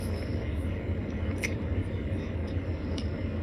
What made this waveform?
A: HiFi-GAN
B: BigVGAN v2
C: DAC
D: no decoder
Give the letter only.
C